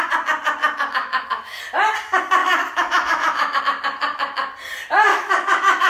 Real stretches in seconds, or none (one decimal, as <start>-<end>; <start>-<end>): 0.0-1.0; 1.6-2.4; 3.6-5.1